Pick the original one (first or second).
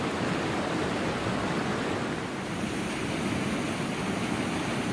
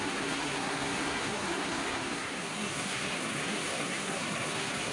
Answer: first